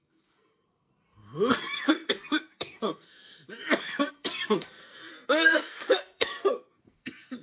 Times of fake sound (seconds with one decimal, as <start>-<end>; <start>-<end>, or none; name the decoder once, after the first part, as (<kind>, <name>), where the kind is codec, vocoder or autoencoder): 0.0-0.9 (codec, SNAC); 1.5-7.4